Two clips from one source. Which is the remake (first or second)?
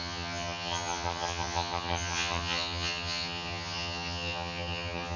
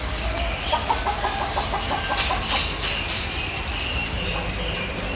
first